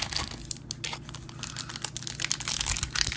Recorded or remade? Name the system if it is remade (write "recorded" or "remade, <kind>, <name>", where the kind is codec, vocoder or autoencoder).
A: recorded